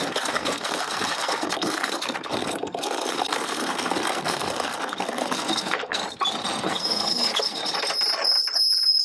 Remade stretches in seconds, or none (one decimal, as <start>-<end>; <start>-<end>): 0.0-6.0; 6.6-7.6